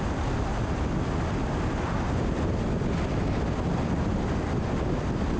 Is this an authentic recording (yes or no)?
yes